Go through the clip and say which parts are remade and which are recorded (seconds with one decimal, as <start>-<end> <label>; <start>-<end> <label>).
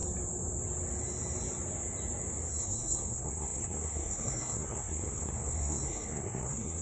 0.0-2.5 recorded; 2.5-6.8 remade